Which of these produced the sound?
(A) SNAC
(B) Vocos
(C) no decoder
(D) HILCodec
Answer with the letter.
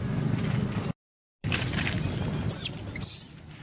C